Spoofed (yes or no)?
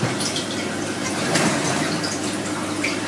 yes